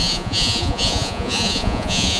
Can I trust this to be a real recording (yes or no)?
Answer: no